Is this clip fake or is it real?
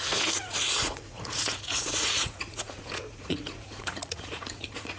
fake